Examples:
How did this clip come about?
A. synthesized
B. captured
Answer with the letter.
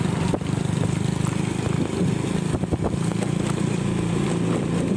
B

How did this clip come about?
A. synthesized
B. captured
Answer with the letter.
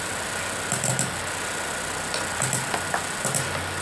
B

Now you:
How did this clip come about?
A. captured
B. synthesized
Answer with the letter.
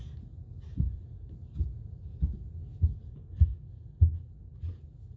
A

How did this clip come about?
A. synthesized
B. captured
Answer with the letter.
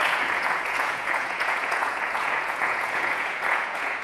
A